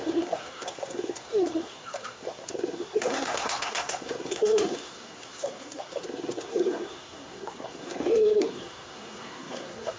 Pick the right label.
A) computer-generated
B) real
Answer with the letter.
A